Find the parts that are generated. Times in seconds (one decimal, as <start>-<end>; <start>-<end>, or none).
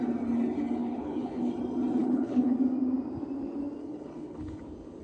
0.8-1.5; 2.0-2.5; 3.8-4.6